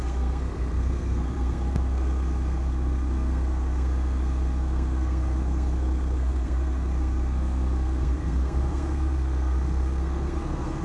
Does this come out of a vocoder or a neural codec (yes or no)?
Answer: yes